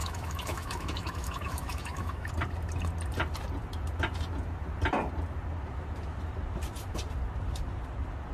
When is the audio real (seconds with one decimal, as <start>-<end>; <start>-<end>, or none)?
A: 2.3-8.3